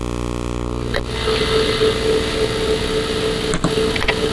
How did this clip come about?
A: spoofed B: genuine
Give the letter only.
B